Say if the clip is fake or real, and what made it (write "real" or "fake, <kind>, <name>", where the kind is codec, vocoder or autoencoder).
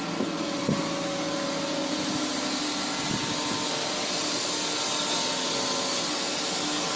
real